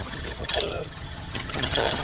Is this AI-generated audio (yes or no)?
yes